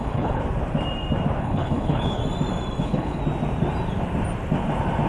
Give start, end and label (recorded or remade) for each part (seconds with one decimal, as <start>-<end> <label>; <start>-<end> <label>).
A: 0.0-0.4 remade; 0.4-1.4 recorded; 1.4-2.2 remade; 2.2-2.8 recorded; 2.8-3.2 remade; 3.2-5.1 recorded